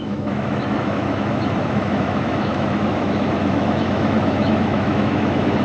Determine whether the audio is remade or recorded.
remade